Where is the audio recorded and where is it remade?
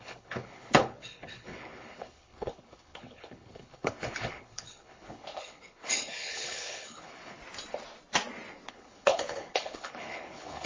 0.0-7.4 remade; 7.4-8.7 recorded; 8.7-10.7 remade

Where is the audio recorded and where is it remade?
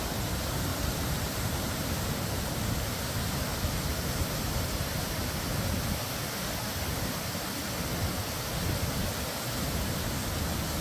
0.0-0.7 recorded; 0.7-3.0 remade; 3.0-3.5 recorded; 3.5-4.9 remade; 4.9-10.8 recorded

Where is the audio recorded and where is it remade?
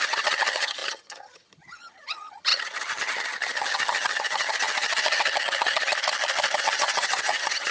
0.0-5.9 remade; 5.9-6.6 recorded; 6.6-7.7 remade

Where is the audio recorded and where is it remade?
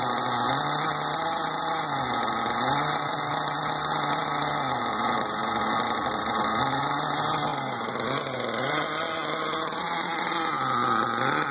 0.0-11.5 recorded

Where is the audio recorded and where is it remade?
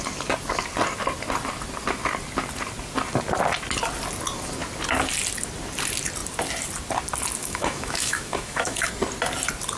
0.0-7.4 recorded; 7.4-8.9 remade; 8.9-9.8 recorded